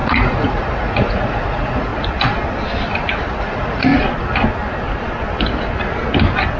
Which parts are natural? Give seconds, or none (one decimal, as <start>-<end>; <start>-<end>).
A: 1.9-3.4; 3.9-6.6